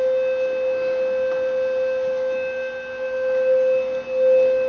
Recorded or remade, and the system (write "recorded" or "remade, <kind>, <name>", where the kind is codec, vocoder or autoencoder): recorded